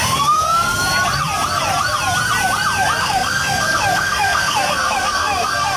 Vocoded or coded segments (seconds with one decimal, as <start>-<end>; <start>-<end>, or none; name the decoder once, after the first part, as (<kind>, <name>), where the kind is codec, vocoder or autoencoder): 0.0-0.7 (codec, SNAC); 3.0-5.8